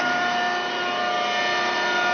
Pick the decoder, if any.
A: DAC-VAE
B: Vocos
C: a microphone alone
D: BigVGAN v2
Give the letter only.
C